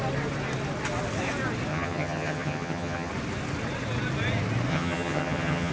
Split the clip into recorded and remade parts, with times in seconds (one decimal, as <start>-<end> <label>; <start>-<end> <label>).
0.0-1.7 recorded; 1.7-3.1 remade; 3.1-4.7 recorded; 4.7-5.7 remade